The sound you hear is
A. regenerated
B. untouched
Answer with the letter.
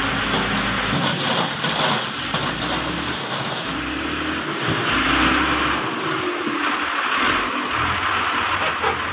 B